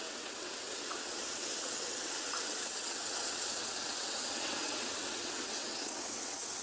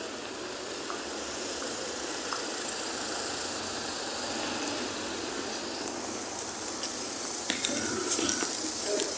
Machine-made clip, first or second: first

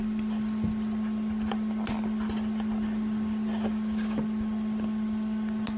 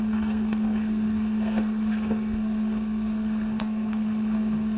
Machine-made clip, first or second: second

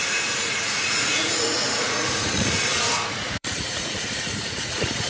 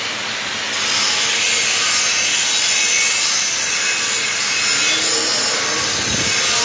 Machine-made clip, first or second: first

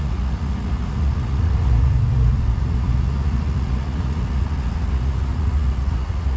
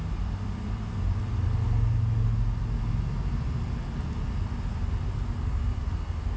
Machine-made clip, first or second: first